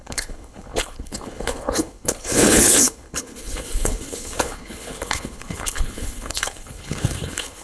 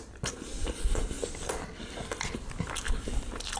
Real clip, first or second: second